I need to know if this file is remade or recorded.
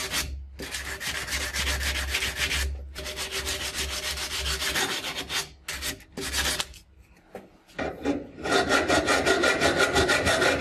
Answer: recorded